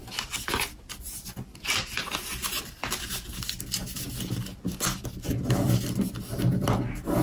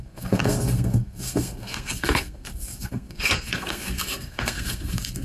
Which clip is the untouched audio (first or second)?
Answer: first